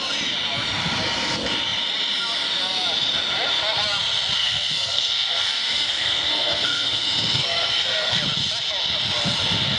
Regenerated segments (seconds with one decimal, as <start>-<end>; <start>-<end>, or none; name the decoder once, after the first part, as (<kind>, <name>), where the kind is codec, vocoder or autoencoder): 4.4-8.2 (codec, SNAC)